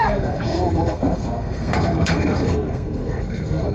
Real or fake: fake